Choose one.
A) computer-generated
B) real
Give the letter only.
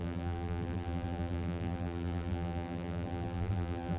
A